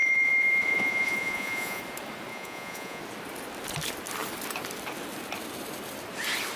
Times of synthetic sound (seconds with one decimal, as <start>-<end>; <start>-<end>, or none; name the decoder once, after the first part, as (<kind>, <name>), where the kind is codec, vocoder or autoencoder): 0.0-1.8 (vocoder, Vocos); 2.3-3.0